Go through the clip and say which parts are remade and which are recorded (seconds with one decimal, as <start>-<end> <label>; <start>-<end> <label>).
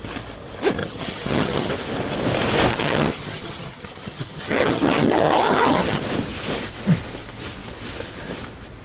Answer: 0.0-0.8 recorded; 0.8-1.7 remade; 1.7-2.7 recorded; 2.7-6.0 remade; 6.0-8.8 recorded